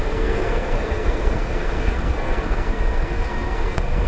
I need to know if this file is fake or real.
fake